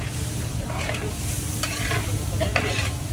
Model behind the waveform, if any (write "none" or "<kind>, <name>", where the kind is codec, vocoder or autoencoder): vocoder, BigVGAN v2